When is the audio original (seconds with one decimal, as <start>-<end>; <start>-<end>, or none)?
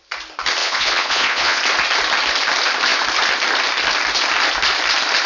0.0-0.6; 1.6-5.3